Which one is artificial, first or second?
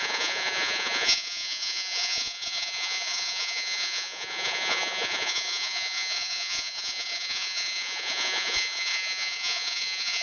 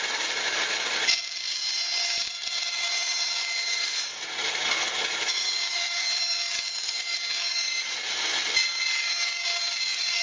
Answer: first